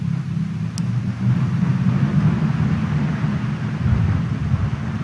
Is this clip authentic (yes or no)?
yes